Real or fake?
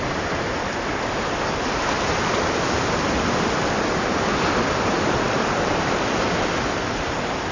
fake